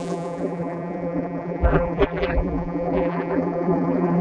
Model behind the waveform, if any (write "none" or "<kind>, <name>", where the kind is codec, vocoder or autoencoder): vocoder, BigVGAN v2